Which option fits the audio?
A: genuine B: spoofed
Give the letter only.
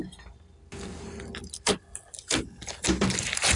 B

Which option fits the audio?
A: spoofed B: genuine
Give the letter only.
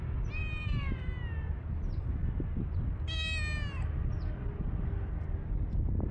B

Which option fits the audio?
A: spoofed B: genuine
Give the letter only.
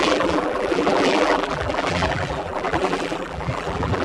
A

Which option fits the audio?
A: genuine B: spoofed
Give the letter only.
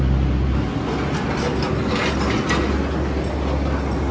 A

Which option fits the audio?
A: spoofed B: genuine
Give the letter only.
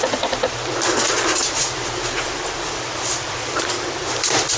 A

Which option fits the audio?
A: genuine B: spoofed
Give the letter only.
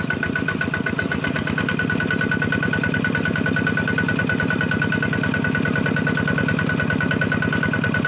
A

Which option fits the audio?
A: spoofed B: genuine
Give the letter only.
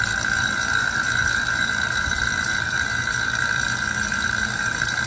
A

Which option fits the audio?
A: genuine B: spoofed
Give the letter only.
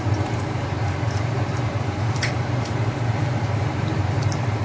B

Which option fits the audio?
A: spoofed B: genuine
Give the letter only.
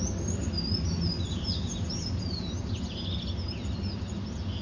B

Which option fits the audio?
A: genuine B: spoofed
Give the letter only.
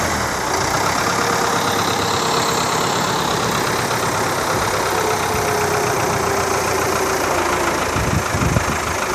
A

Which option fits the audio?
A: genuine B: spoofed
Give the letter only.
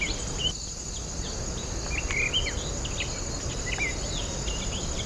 A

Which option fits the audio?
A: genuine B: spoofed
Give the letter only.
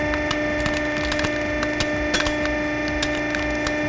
A